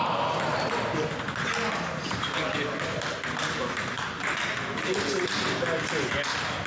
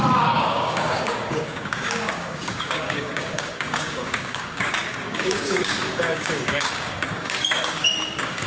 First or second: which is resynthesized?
second